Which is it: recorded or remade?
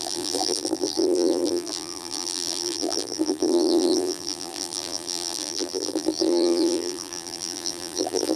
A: remade